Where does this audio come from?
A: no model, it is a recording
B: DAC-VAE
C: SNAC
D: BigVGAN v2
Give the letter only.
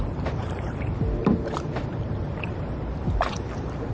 D